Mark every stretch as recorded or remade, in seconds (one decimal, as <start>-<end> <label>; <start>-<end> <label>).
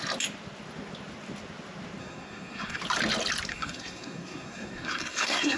0.0-2.0 recorded; 2.0-2.8 remade; 2.8-3.5 recorded; 3.5-5.6 remade